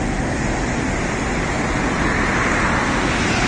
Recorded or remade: recorded